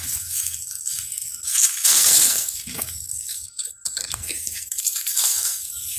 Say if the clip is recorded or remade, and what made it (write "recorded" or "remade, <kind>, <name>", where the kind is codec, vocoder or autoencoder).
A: remade, codec, SNAC